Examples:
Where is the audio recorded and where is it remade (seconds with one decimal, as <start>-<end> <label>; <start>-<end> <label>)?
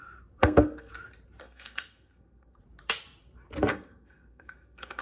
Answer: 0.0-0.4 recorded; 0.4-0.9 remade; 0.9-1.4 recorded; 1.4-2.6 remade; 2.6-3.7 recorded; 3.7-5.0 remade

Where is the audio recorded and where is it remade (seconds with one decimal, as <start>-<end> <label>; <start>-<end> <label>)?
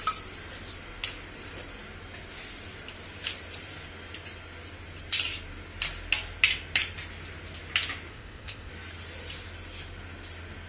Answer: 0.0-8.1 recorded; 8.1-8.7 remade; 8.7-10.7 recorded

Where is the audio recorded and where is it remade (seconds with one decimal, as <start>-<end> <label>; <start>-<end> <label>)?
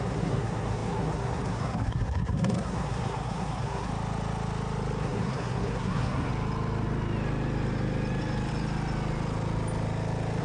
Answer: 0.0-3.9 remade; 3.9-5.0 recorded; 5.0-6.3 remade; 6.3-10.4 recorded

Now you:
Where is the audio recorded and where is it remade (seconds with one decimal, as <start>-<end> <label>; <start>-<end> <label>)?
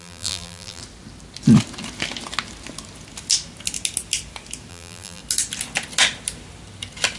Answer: 0.0-0.8 remade; 0.8-4.7 recorded; 4.7-5.2 remade; 5.2-7.2 recorded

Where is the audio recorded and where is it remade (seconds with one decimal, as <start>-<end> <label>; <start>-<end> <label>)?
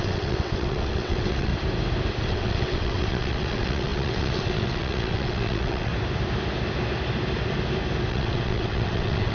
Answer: 0.0-1.5 remade; 1.5-2.2 recorded; 2.2-5.9 remade; 5.9-8.1 recorded; 8.1-9.3 remade